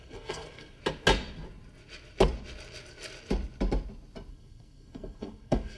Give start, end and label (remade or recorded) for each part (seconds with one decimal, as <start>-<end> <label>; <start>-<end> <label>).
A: 0.0-0.8 remade; 0.8-4.3 recorded; 4.3-5.8 remade